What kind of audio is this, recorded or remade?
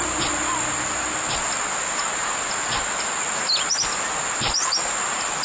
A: recorded